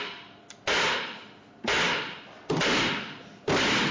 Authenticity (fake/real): real